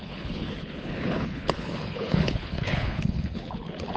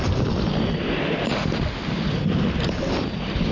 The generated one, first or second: first